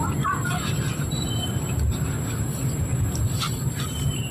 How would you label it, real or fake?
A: fake